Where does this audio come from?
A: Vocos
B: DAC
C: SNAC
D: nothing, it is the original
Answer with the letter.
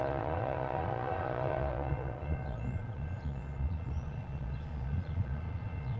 A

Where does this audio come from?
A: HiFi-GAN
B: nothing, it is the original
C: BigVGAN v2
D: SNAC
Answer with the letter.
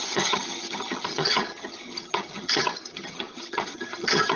A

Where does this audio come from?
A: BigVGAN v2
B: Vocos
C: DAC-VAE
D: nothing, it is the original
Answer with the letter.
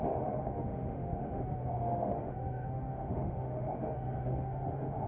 C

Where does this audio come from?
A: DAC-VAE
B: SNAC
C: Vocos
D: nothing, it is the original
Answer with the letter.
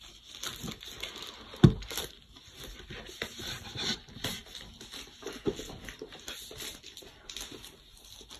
D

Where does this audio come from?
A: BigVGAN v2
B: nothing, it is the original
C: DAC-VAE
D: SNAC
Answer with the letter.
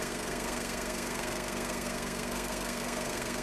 D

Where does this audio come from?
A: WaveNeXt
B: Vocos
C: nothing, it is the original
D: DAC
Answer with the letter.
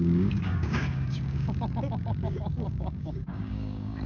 D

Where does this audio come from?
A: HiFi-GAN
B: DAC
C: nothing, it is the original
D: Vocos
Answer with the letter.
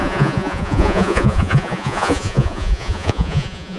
D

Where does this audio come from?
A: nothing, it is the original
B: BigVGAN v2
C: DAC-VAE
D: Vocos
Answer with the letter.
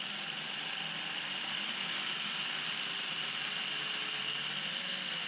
A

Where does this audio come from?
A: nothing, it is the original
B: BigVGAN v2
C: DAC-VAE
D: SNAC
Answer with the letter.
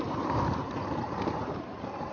B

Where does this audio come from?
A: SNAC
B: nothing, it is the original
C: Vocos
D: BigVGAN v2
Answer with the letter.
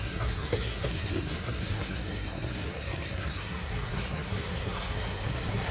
A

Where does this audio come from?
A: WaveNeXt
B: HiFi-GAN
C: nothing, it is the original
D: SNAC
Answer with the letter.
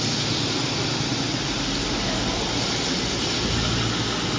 C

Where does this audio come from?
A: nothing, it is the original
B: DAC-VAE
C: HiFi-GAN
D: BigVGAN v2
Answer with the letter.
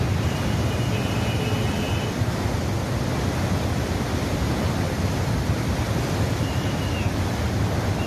A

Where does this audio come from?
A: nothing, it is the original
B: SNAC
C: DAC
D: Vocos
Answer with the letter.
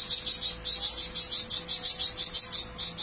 A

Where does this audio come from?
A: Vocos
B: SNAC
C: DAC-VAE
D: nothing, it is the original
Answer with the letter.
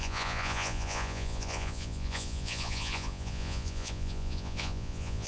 A